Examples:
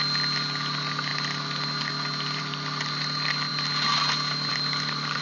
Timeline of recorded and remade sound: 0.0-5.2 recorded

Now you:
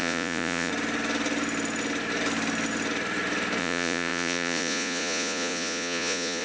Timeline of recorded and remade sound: 0.0-0.7 remade; 0.7-3.6 recorded; 3.6-6.4 remade